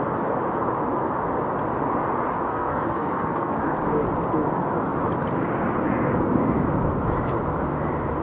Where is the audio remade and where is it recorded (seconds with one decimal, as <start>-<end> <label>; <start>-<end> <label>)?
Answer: 0.0-2.5 recorded; 2.5-3.6 remade; 3.6-8.2 recorded